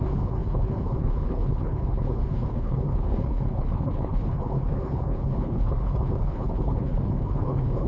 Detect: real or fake fake